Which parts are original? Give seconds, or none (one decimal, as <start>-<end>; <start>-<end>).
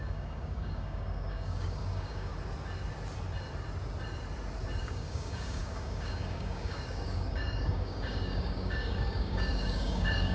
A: 2.3-4.8